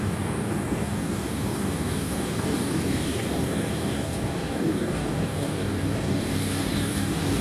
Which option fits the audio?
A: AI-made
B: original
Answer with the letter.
A